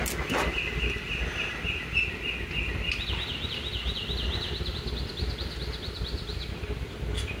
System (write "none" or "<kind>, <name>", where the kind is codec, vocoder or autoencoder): none